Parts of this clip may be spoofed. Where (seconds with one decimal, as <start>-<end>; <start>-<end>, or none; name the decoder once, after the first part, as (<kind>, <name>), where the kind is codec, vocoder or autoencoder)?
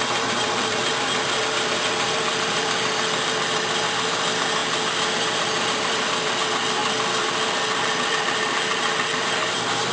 0.0-4.6 (vocoder, BigVGAN v2); 5.2-9.9